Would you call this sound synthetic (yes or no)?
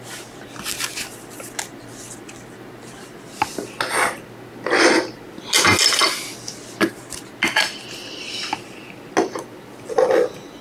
no